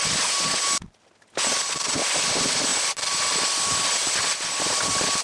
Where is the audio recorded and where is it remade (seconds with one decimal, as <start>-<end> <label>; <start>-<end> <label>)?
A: 0.0-5.2 recorded